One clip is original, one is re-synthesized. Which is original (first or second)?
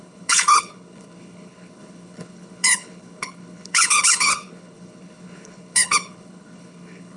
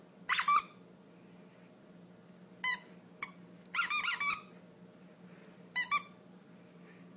second